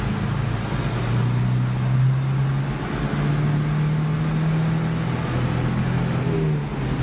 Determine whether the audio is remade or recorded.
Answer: recorded